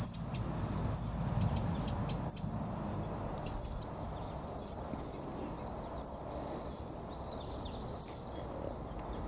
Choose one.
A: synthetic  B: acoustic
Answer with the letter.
B